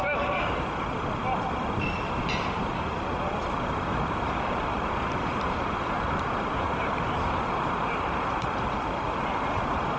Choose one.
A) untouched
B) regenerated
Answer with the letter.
B